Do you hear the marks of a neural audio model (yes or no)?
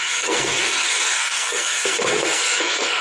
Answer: yes